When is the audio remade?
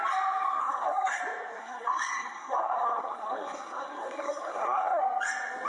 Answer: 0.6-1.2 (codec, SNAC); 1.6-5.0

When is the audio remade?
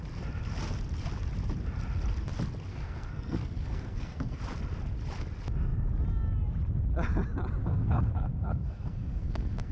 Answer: 2.7-4.4 (codec, SNAC); 7.6-9.7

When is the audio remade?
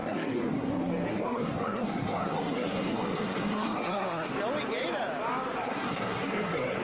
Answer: 0.0-0.7 (codec, SNAC); 1.1-4.3; 5.6-6.8